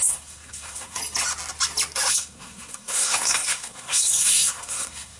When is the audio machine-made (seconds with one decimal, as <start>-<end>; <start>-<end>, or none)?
0.0-1.0; 2.1-5.2